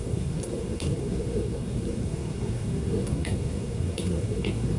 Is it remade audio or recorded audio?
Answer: remade